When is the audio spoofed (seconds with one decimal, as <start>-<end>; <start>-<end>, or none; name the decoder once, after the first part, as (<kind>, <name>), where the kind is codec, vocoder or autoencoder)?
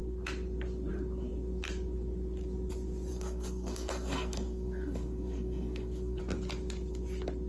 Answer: 3.1-6.2 (codec, SNAC)